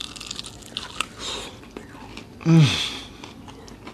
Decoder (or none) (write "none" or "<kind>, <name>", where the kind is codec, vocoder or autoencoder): none